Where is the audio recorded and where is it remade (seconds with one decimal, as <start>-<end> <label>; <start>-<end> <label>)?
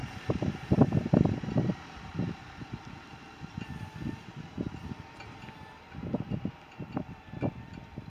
0.0-3.4 remade; 3.4-8.1 recorded